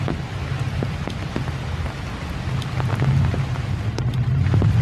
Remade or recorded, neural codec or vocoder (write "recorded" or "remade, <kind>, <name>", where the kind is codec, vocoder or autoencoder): recorded